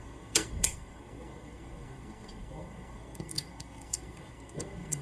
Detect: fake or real fake